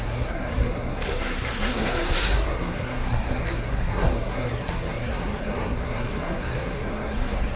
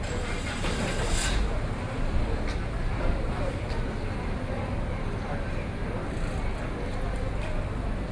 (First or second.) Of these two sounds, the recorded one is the second